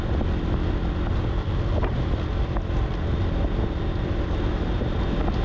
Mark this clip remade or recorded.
recorded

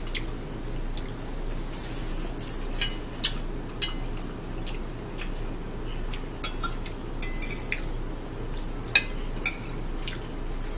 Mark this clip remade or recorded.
recorded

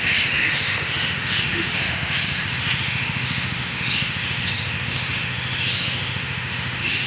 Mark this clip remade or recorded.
remade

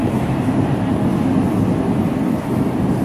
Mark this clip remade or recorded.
recorded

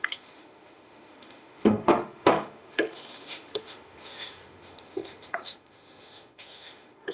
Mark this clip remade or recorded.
remade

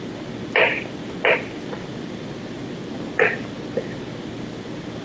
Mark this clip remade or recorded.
recorded